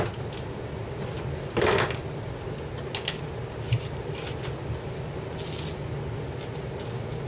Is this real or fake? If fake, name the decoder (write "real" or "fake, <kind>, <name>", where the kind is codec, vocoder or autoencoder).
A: real